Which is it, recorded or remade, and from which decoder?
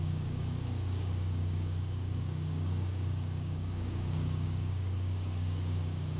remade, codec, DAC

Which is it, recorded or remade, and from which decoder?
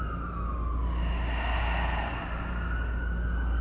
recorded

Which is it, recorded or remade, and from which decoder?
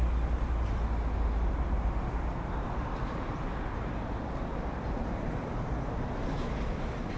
recorded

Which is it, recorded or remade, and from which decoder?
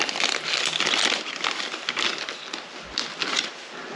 recorded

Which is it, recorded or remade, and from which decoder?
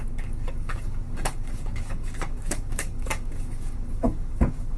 remade, codec, DAC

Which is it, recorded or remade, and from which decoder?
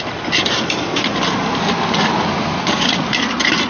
recorded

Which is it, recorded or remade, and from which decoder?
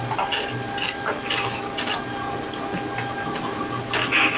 recorded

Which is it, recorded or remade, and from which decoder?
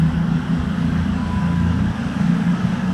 remade, codec, DAC